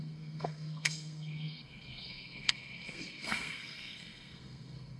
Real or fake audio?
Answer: fake